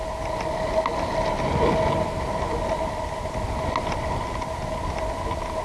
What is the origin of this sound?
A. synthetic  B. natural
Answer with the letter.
B